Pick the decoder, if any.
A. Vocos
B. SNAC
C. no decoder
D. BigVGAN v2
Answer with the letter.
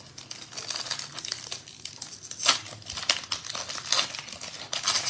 C